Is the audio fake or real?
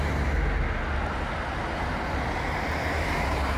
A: real